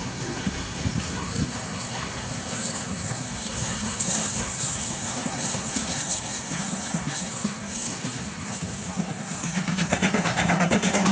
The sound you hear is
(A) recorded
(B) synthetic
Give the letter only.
B